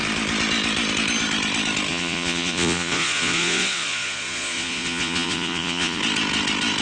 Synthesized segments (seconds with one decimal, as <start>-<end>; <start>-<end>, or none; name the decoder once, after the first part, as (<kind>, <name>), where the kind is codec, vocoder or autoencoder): 1.9-6.0 (vocoder, Vocos)